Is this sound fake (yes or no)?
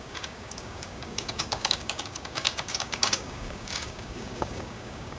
yes